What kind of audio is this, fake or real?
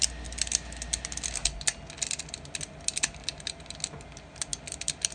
real